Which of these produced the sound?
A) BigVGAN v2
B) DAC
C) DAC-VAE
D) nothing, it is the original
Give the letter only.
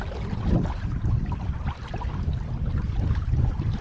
D